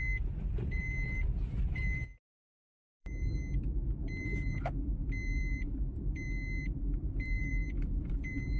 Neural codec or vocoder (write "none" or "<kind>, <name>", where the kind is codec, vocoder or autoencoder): vocoder, BigVGAN v2